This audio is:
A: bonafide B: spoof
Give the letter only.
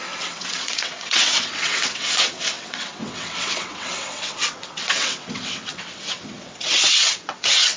B